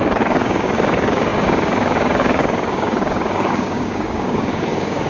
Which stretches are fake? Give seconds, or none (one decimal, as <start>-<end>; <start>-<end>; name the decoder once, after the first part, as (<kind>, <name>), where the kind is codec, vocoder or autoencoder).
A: 0.0-5.1 (codec, DAC)